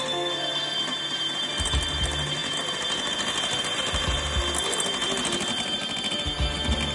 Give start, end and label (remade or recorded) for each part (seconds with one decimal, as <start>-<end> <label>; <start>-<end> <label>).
0.0-6.9 recorded